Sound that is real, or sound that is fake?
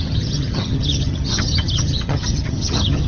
fake